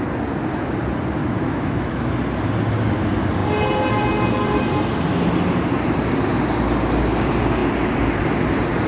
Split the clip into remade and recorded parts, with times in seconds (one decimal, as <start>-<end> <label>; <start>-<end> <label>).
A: 0.0-1.2 recorded; 1.2-2.1 remade; 2.1-8.9 recorded